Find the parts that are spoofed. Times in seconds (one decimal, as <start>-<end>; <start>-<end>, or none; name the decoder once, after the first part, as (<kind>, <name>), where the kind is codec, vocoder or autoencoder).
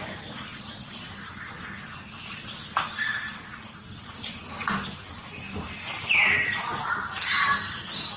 0.5-1.1 (vocoder, Vocos)